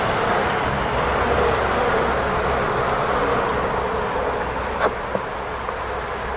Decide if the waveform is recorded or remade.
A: recorded